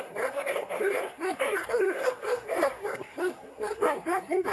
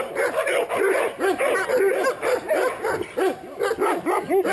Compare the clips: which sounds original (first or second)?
second